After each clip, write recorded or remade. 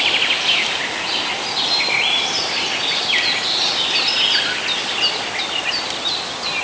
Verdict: recorded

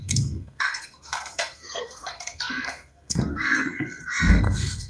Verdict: remade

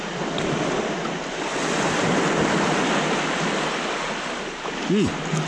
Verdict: recorded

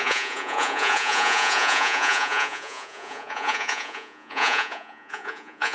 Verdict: remade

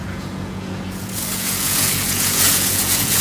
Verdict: remade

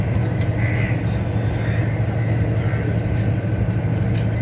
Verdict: recorded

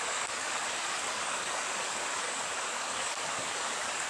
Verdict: remade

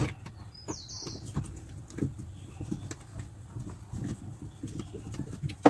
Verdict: recorded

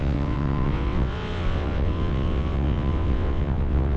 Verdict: remade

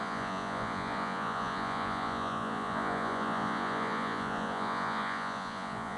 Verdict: remade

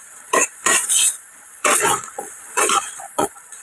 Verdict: remade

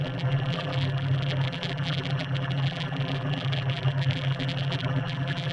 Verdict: remade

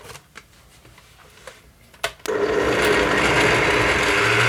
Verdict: recorded